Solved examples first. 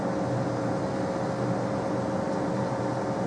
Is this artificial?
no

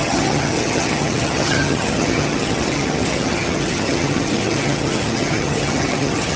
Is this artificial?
yes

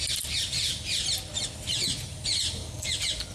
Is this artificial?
no